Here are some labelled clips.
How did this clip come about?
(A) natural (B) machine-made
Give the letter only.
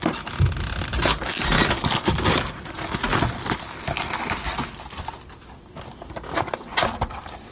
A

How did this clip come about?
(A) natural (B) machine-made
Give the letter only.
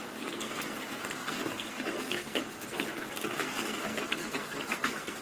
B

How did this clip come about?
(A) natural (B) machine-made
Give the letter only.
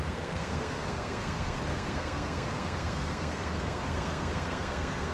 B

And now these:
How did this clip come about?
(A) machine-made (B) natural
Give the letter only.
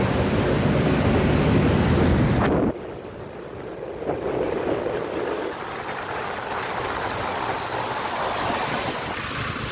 B